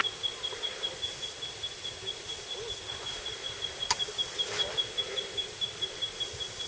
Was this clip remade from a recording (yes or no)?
no